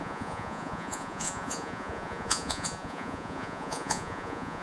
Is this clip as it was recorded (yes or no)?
no